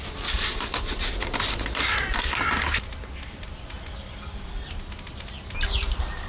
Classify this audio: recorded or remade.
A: recorded